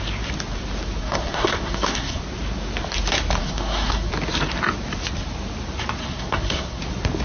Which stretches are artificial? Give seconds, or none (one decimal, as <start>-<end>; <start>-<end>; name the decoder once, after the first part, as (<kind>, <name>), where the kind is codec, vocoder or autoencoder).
1.0-2.2 (codec, SNAC); 3.4-4.1; 6.0-6.8